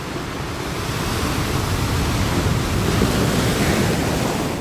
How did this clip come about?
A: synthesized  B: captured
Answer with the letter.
B